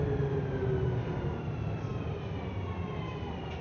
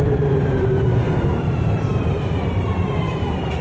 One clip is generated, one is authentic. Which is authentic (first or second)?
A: first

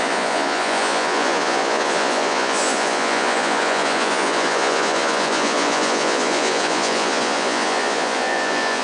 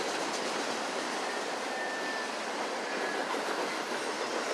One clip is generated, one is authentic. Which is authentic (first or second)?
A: second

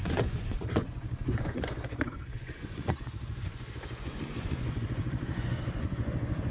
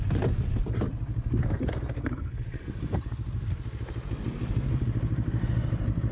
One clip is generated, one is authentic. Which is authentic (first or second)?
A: second